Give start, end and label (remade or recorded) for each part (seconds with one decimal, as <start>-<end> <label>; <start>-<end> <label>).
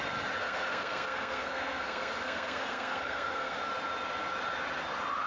0.0-0.4 recorded; 0.4-3.6 remade; 3.6-5.3 recorded